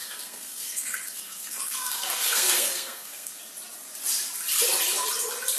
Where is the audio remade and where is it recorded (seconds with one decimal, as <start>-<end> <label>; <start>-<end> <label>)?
0.0-3.4 remade; 3.4-5.6 recorded